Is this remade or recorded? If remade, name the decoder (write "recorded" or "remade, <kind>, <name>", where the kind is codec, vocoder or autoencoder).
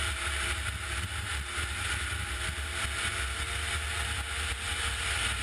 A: recorded